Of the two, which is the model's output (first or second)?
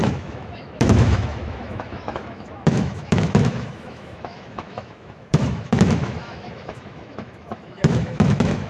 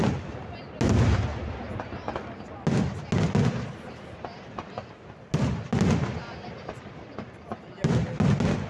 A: first